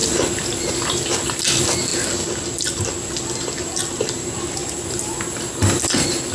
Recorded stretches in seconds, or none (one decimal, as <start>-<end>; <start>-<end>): 0.0-6.3